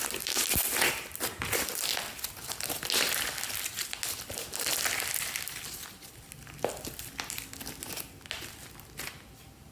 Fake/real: real